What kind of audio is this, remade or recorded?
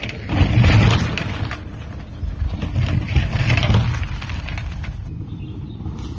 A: recorded